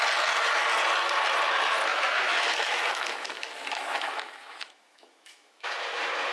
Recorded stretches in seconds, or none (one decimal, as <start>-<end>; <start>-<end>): 0.0-1.9; 5.7-6.3